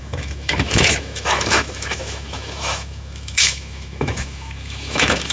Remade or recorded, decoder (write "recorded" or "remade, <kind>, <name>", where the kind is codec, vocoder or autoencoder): remade, autoencoder, DAC-VAE